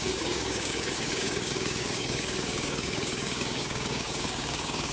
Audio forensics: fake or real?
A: fake